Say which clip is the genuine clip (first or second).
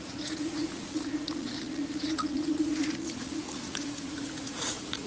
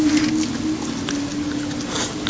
second